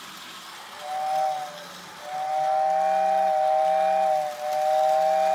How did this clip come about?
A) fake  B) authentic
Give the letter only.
B